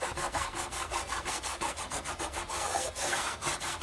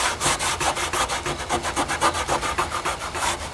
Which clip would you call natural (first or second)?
second